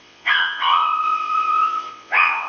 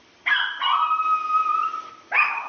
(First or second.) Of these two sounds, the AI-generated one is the first